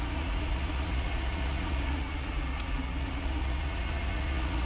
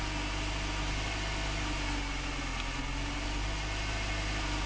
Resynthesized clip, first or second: first